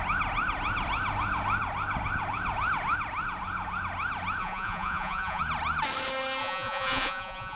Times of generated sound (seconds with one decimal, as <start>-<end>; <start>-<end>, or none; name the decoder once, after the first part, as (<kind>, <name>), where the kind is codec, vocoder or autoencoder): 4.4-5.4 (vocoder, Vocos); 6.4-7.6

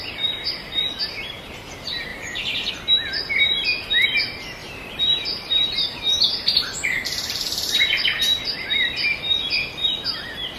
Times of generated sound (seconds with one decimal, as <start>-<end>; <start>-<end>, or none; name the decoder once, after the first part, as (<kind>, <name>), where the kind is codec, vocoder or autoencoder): 2.1-2.7 (vocoder, BigVGAN v2); 4.6-8.0

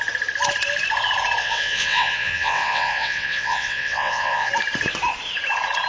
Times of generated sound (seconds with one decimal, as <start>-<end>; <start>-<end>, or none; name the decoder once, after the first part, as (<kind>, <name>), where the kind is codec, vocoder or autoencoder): 1.4-4.5 (vocoder, WaveNeXt)